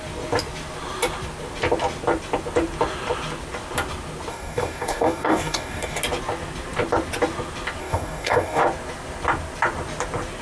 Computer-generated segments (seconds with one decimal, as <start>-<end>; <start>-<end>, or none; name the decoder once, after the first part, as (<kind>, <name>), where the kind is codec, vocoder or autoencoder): 4.3-6.0 (codec, DAC); 7.8-8.6